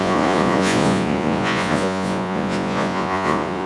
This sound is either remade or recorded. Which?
remade